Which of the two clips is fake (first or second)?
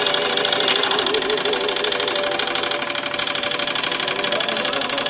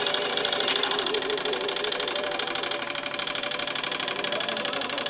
second